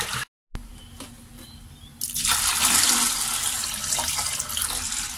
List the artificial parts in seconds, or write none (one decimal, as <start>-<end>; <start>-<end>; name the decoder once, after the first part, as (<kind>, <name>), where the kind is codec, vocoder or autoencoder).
none